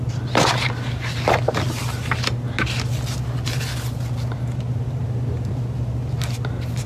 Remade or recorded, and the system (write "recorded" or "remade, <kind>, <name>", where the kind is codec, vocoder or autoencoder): recorded